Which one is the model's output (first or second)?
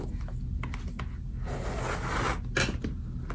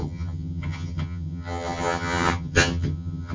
second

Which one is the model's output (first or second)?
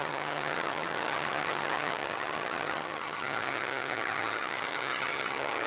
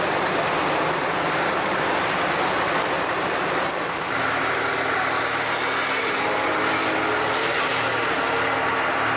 first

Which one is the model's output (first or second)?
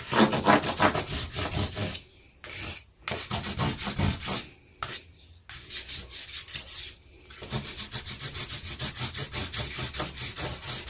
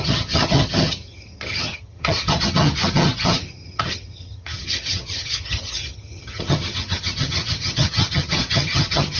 second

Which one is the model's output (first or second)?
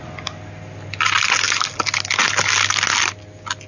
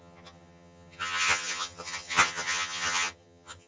second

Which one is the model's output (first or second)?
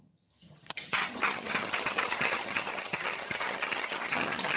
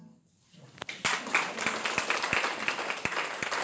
first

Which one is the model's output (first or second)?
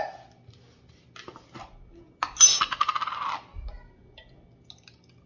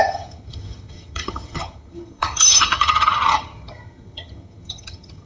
second